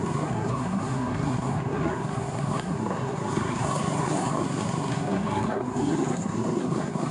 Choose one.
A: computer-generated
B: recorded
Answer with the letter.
A